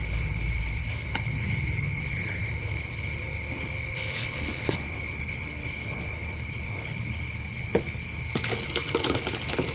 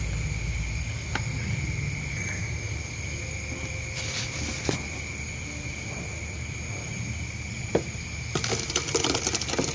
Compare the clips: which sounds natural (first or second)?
second